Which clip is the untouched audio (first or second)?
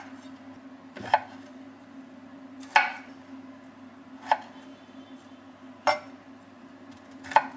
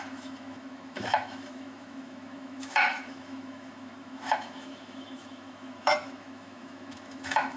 first